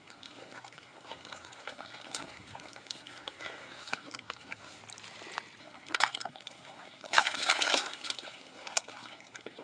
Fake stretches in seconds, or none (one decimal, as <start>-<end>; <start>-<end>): 0.0-4.8; 5.6-9.6